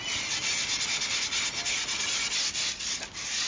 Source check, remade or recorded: recorded